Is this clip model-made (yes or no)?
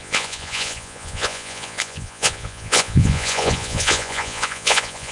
yes